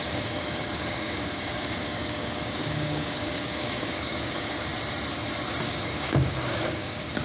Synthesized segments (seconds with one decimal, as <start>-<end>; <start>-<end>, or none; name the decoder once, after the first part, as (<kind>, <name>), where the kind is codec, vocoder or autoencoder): 0.0-4.7 (codec, DAC); 5.6-7.2